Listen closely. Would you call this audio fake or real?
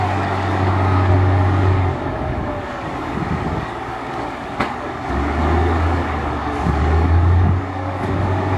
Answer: fake